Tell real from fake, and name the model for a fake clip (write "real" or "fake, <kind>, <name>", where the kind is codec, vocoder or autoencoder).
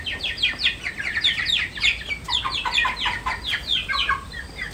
real